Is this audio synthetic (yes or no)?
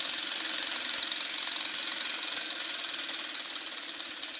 no